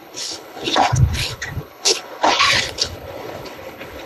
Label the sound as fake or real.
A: fake